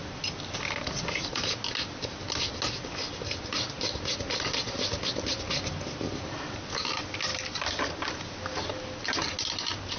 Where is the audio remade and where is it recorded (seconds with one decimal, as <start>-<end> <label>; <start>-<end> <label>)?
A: 0.0-10.0 recorded